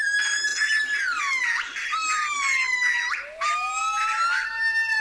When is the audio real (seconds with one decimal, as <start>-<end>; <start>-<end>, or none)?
0.0-5.0